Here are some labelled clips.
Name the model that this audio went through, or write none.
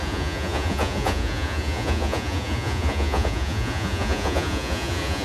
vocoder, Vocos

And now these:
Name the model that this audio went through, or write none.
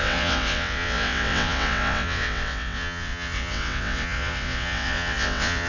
vocoder, WaveNeXt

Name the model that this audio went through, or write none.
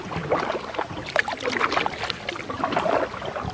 none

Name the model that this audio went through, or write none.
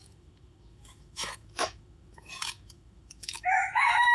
autoencoder, DAC-VAE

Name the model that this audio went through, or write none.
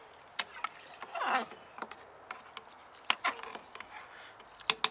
none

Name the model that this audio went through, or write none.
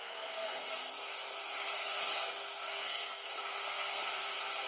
codec, SNAC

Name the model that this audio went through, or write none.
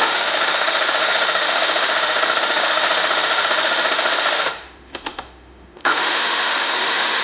autoencoder, DAC-VAE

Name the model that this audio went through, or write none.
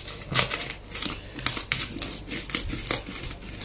none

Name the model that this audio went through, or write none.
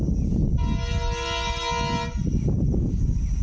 none